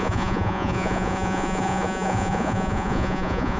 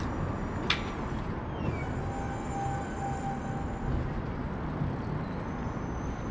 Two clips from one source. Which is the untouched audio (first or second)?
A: second